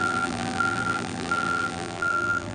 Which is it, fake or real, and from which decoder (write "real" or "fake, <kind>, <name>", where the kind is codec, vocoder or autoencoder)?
fake, vocoder, BigVGAN v2